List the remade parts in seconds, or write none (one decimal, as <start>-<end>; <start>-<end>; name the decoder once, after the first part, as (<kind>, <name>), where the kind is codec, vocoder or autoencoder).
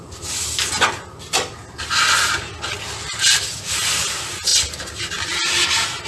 none